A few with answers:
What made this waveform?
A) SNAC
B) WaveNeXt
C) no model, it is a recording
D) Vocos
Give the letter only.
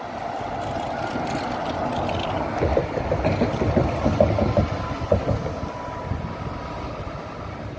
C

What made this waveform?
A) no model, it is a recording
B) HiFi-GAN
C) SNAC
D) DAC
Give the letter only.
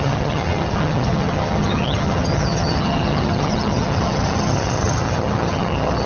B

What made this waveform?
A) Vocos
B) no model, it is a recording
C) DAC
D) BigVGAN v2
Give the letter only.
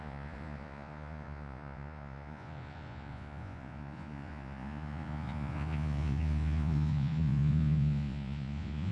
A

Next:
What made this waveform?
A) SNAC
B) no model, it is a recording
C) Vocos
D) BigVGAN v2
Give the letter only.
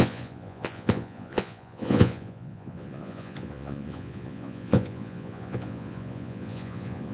C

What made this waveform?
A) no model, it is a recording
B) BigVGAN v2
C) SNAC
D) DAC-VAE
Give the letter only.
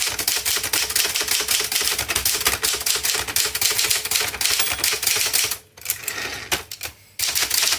A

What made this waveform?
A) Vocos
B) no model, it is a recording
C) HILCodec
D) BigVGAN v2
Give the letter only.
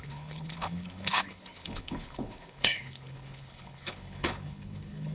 C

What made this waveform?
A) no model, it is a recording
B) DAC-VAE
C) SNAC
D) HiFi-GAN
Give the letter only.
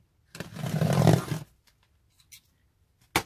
A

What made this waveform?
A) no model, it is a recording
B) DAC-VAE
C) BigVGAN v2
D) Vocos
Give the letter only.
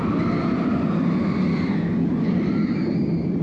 A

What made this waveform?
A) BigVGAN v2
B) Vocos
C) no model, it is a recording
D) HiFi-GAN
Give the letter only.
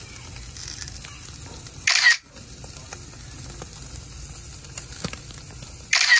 C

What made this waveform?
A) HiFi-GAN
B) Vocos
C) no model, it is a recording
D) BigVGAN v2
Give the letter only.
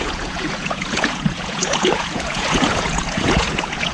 B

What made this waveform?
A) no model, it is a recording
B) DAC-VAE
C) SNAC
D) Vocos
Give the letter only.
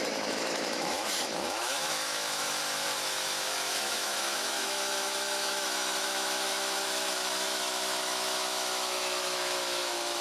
B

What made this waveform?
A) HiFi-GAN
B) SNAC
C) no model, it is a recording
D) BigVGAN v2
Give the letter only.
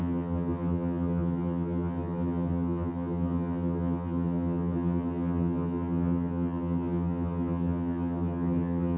A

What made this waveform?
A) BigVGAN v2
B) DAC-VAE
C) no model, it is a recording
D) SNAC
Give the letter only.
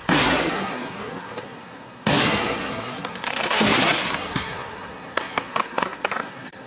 D